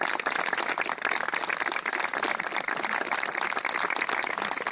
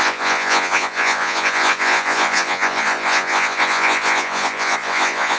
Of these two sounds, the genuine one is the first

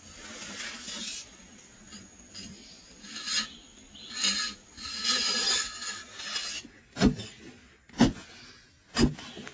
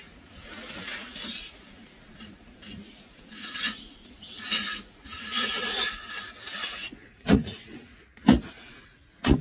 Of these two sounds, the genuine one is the first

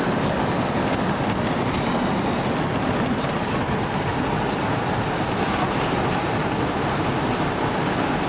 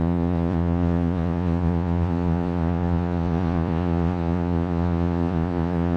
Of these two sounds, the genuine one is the first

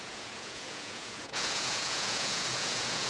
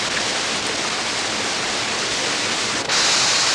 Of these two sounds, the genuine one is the second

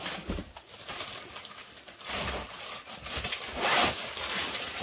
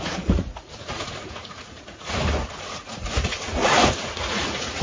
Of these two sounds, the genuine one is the first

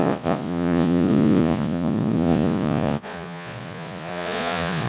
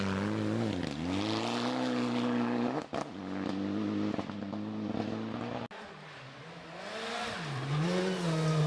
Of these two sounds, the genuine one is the second